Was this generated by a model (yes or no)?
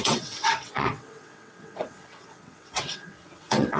yes